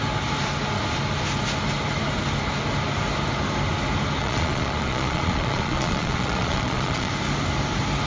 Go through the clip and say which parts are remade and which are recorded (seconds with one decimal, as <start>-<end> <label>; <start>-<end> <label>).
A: 0.0-4.2 recorded; 4.2-7.1 remade; 7.1-8.1 recorded